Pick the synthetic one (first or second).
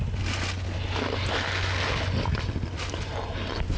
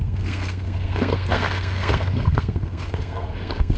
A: second